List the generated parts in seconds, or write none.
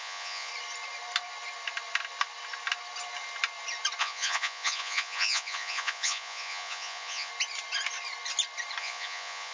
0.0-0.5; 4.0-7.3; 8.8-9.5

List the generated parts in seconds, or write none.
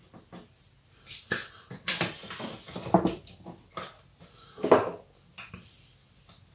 none